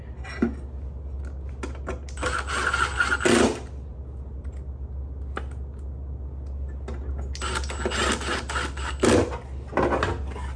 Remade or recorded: recorded